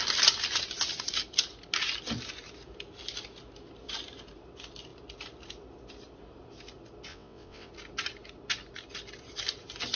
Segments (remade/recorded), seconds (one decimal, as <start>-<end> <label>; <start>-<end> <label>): 0.0-7.1 recorded; 7.1-7.7 remade; 7.7-10.0 recorded